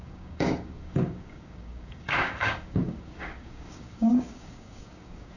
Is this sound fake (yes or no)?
yes